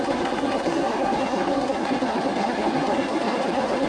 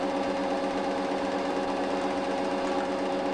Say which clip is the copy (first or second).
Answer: first